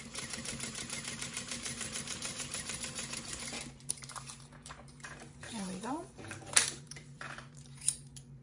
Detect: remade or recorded remade